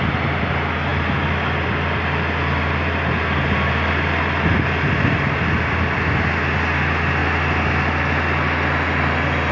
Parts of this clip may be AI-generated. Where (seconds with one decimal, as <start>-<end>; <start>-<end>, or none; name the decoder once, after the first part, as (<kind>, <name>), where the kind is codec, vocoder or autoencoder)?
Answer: none